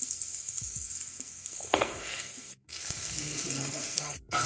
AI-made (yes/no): yes